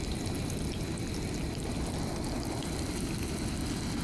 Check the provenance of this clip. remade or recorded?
recorded